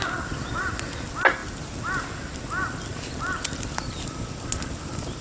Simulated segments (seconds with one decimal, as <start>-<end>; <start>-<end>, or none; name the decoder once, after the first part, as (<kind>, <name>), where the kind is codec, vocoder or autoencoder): none